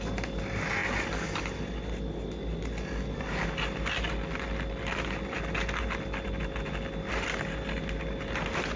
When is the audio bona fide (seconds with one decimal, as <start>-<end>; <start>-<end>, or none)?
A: 0.0-8.8